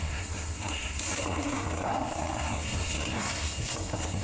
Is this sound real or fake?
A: fake